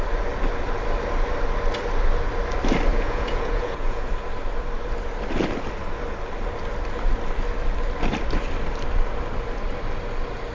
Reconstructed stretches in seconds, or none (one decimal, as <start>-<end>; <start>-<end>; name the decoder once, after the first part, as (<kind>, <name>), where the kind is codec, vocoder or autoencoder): 2.9-4.1 (vocoder, Vocos)